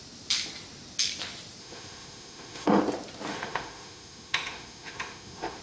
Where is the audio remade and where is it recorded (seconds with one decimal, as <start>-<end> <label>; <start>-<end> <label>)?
0.0-1.6 recorded; 1.6-2.8 remade; 2.8-3.3 recorded; 3.3-5.6 remade